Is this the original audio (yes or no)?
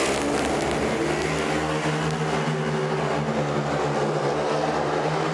yes